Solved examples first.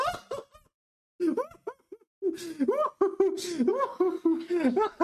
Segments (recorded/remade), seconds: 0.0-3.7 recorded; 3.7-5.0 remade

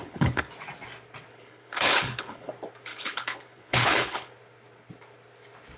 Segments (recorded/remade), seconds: 0.0-0.5 remade; 0.5-1.3 recorded; 1.3-2.5 remade; 2.5-2.9 recorded; 2.9-4.3 remade; 4.3-5.8 recorded

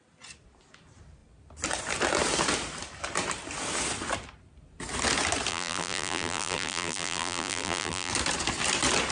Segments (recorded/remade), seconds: 0.0-5.5 recorded; 5.5-8.1 remade; 8.1-9.1 recorded

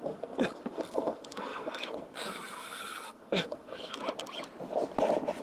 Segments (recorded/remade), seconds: 0.0-4.0 remade; 4.0-5.4 recorded

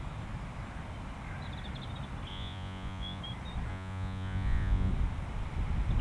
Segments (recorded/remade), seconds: 0.0-2.3 recorded; 2.3-3.2 remade; 3.2-3.7 recorded; 3.7-4.9 remade; 4.9-6.0 recorded

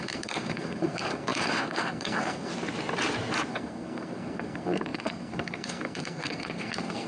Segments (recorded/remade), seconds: 0.0-2.5 remade; 2.5-3.5 recorded; 3.5-7.1 remade